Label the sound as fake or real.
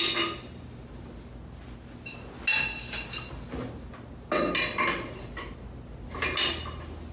real